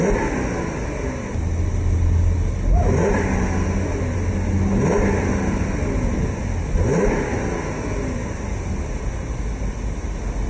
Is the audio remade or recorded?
recorded